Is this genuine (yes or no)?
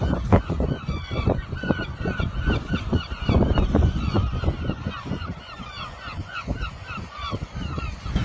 no